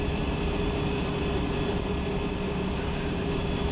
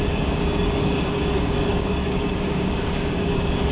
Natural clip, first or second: first